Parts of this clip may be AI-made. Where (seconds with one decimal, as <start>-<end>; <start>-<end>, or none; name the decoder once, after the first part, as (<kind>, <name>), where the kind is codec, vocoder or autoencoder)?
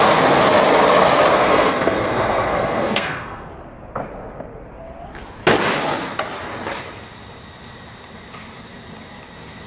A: 1.3-3.5 (codec, SNAC)